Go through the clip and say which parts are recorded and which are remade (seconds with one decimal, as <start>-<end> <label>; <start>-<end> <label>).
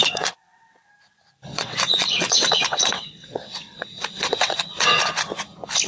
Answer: 0.0-0.9 remade; 0.9-1.5 recorded; 1.5-5.0 remade; 5.0-5.9 recorded